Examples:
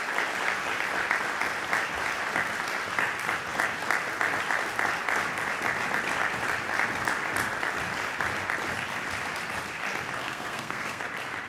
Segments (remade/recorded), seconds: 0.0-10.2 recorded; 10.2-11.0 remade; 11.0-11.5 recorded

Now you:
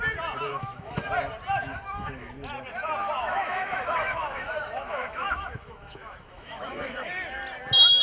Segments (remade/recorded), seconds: 0.0-0.5 recorded; 0.5-1.1 remade; 1.1-1.7 recorded; 1.7-2.3 remade; 2.3-3.2 recorded; 3.2-7.1 remade; 7.1-8.0 recorded